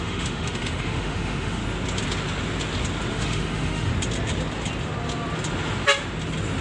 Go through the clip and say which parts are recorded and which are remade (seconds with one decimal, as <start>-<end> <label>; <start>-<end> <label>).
0.0-1.6 remade; 1.6-3.1 recorded; 3.1-3.9 remade; 3.9-6.6 recorded

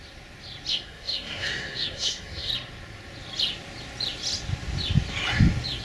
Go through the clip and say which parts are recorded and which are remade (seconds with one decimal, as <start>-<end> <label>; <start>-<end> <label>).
0.0-0.7 recorded; 0.7-2.5 remade; 2.5-5.8 recorded

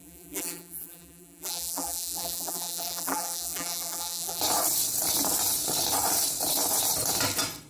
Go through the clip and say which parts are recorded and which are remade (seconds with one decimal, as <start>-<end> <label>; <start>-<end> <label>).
0.0-4.4 remade; 4.4-7.7 recorded

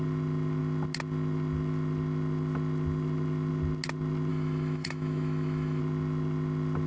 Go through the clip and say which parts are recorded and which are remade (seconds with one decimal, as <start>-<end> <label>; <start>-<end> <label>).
0.0-4.3 recorded; 4.3-5.8 remade; 5.8-6.9 recorded

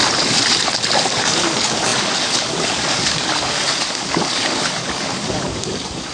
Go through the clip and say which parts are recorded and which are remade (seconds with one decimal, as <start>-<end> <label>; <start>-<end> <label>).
0.0-1.0 recorded; 1.0-6.1 remade

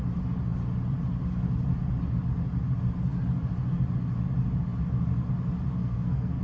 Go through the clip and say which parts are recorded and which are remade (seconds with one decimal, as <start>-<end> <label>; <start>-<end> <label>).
0.0-5.7 recorded; 5.7-6.4 remade

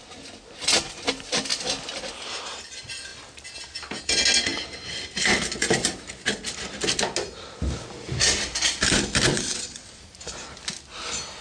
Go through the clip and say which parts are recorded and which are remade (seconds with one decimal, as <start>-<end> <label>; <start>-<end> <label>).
0.0-9.3 recorded; 9.3-10.0 remade; 10.0-11.4 recorded

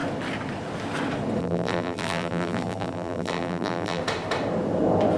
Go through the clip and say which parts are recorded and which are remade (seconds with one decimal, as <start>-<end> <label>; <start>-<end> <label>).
0.0-1.4 recorded; 1.4-4.0 remade; 4.0-5.2 recorded